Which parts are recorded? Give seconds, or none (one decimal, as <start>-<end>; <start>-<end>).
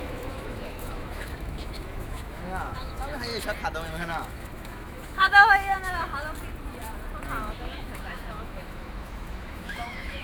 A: 3.3-3.9; 6.1-7.4